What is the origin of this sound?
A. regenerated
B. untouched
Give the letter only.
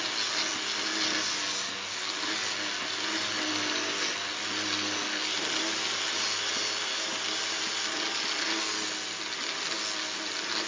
B